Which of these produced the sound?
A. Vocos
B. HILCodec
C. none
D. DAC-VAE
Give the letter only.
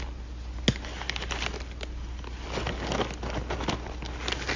C